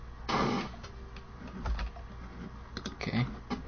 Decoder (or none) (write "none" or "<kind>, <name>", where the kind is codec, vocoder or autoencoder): none